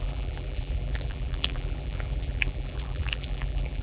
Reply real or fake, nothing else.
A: fake